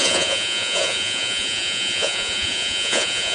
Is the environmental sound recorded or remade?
remade